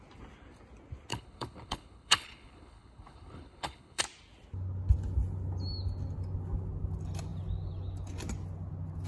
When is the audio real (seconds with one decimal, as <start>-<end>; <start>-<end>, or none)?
0.0-1.1; 4.0-9.1